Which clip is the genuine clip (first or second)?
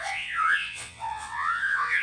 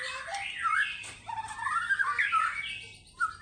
second